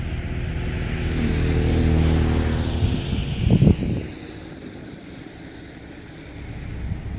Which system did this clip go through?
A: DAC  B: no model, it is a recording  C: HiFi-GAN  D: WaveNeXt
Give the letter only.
B